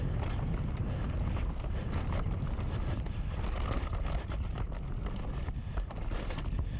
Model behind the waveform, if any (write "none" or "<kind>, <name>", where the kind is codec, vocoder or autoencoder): none